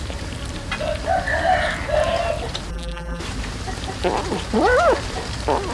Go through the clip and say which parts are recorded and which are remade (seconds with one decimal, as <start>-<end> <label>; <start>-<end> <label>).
0.0-2.7 recorded; 2.7-3.2 remade; 3.2-5.7 recorded